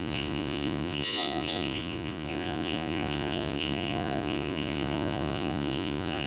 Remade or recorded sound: remade